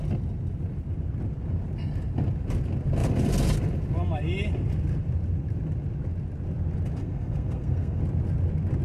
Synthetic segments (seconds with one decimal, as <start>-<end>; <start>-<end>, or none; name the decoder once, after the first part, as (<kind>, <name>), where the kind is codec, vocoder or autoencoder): 7.0-8.0 (codec, SNAC)